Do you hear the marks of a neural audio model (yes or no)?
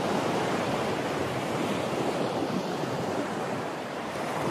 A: yes